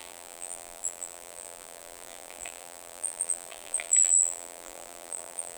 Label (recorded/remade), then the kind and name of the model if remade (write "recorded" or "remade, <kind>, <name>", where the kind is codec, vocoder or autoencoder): remade, vocoder, BigVGAN v2